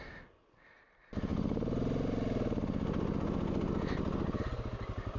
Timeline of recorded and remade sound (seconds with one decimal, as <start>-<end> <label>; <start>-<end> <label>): 0.0-5.2 recorded